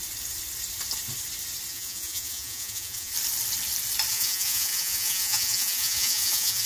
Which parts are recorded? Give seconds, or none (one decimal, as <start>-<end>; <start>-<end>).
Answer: 0.0-1.7; 3.1-4.1